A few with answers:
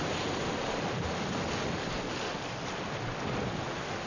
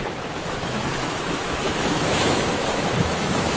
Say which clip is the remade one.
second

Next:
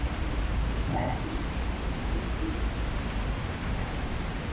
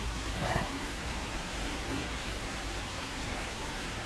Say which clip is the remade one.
second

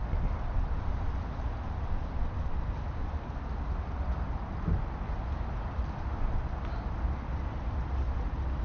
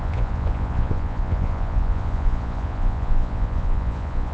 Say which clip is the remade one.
second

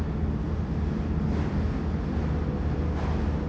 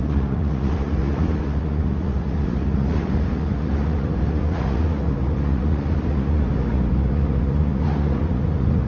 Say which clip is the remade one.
second